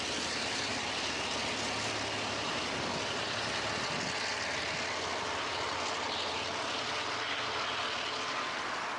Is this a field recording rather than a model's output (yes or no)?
yes